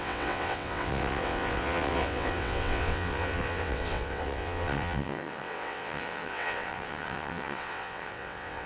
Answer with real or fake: fake